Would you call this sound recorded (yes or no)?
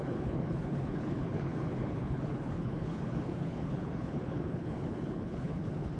no